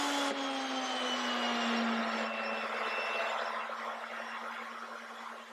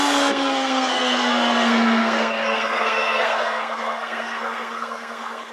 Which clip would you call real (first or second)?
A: first